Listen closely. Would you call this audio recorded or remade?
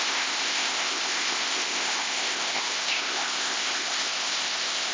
remade